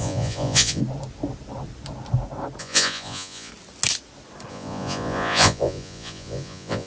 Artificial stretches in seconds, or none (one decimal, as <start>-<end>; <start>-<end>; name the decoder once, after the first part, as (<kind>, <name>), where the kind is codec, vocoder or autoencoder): 0.0-0.8 (vocoder, Vocos); 2.6-3.5; 4.5-6.9